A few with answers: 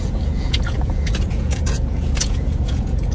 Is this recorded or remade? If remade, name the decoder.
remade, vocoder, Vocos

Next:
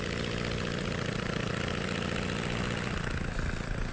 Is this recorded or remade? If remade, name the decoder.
recorded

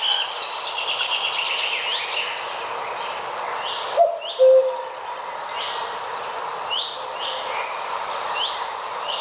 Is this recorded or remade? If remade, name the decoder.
recorded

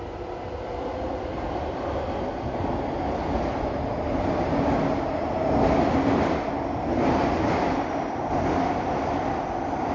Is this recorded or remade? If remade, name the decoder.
recorded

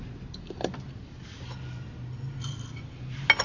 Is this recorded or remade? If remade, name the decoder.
recorded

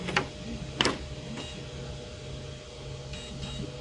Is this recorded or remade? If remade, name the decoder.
recorded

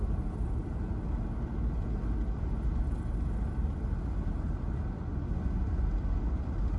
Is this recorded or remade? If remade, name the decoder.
recorded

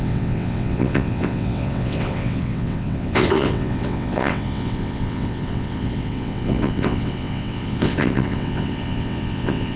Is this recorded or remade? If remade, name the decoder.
remade, vocoder, WaveNeXt